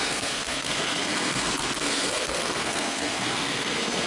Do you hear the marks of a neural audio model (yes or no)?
yes